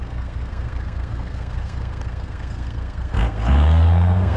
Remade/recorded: remade